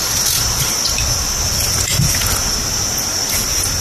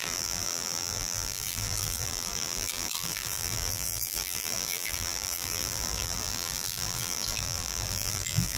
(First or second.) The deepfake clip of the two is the second